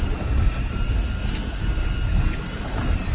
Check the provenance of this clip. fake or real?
real